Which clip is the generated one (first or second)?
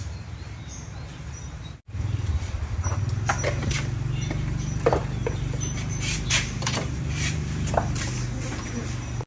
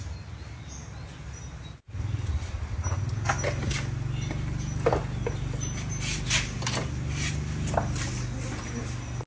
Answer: first